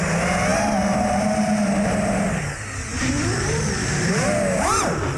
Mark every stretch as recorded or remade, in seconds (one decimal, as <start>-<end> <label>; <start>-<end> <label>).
0.0-0.5 recorded; 0.5-1.6 remade; 1.6-2.9 recorded; 2.9-4.3 remade; 4.3-5.2 recorded